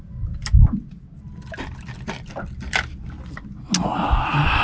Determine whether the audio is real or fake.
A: real